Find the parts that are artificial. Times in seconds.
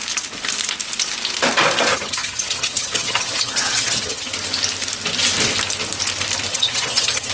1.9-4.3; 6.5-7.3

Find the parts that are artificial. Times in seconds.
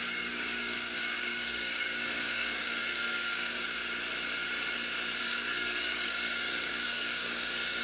0.0-3.8; 5.2-7.8